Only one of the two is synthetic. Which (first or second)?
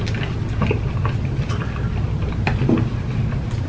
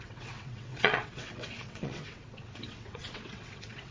second